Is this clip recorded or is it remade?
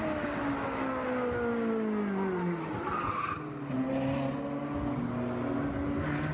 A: recorded